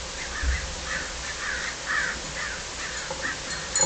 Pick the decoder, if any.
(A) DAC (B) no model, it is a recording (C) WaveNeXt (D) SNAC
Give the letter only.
B